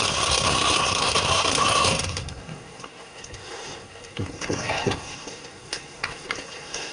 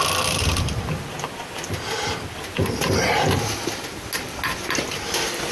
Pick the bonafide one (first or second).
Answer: second